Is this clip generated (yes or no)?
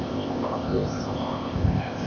yes